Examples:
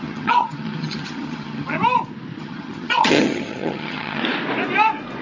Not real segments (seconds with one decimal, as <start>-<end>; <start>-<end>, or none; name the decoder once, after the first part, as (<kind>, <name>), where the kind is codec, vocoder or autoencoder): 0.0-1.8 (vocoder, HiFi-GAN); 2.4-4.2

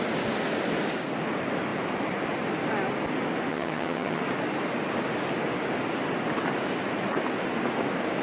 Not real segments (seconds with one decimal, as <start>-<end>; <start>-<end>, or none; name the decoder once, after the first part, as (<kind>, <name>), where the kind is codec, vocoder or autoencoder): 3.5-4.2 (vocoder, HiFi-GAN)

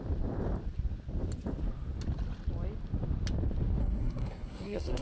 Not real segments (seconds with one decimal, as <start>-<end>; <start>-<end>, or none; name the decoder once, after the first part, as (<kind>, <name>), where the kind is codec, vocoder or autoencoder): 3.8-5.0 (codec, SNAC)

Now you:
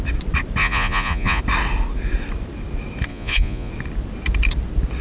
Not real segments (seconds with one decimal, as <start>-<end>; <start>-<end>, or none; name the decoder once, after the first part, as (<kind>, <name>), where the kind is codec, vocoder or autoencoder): 0.6-1.4 (vocoder, Vocos); 3.1-3.7